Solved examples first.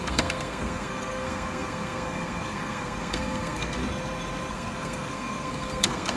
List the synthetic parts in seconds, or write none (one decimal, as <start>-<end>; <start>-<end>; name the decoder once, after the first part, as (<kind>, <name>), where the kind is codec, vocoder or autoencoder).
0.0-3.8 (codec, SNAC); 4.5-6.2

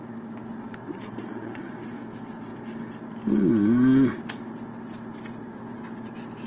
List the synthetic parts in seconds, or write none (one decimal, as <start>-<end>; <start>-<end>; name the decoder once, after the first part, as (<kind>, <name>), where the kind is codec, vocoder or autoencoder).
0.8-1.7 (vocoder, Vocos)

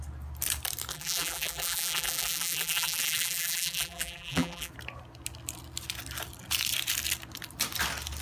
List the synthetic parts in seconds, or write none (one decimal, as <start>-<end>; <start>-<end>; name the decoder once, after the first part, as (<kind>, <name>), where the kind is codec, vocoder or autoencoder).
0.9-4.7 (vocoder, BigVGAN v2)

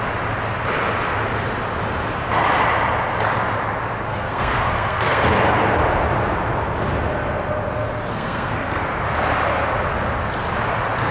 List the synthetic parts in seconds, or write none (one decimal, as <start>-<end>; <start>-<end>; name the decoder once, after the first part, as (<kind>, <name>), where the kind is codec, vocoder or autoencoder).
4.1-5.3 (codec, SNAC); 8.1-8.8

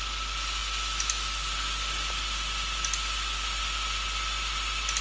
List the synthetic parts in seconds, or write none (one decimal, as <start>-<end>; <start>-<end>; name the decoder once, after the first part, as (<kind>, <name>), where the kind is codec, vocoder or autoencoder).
none

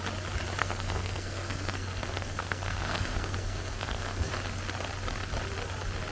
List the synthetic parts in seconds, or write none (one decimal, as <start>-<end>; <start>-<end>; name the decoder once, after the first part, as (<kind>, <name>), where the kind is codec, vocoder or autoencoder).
0.6-4.3 (codec, SNAC)

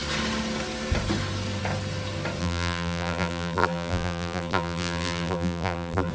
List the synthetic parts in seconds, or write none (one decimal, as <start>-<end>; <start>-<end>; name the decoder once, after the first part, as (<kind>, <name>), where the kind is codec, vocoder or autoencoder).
2.4-6.1 (vocoder, BigVGAN v2)